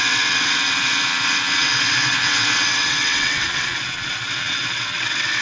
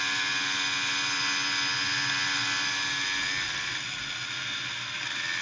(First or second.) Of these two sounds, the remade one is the first